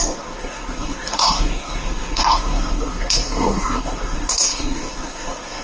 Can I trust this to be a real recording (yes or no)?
no